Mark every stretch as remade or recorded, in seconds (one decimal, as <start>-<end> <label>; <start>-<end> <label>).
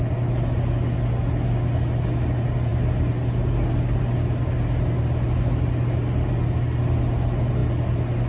0.0-8.3 recorded